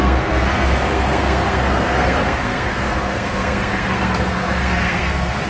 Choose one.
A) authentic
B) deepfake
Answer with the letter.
B